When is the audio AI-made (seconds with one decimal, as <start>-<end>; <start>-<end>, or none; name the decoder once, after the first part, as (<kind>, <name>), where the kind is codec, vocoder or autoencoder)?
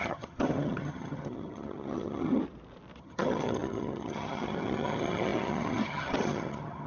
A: 0.0-2.4 (vocoder, HiFi-GAN); 3.0-6.9